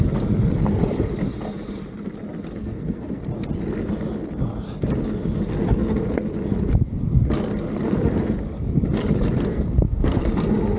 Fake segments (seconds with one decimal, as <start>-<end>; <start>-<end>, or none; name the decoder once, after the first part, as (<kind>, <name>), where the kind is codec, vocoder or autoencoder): 2.6-3.2 (codec, SNAC); 9.5-10.2